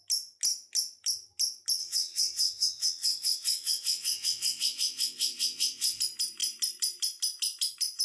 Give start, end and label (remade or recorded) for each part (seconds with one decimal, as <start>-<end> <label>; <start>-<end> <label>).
0.0-1.8 recorded; 1.8-6.0 remade; 6.0-8.0 recorded